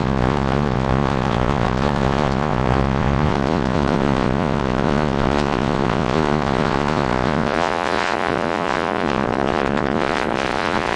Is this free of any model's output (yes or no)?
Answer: no